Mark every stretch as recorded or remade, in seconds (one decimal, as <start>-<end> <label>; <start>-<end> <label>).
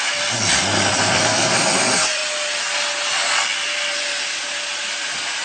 0.0-2.2 remade; 2.2-3.1 recorded; 3.1-5.4 remade